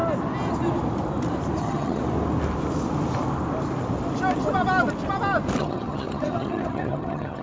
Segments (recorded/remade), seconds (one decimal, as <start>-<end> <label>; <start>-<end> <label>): 0.0-1.6 recorded; 1.6-2.0 remade; 2.0-5.6 recorded; 5.6-7.4 remade